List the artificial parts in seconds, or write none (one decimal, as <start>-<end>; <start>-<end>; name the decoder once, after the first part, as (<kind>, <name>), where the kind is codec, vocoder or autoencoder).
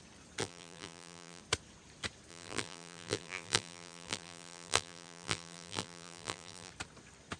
0.4-1.4 (vocoder, BigVGAN v2); 2.3-6.7